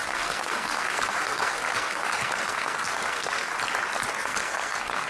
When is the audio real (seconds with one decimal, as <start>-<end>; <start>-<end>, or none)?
3.5-4.1